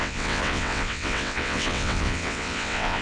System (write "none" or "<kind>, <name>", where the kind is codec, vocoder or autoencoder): vocoder, WaveNeXt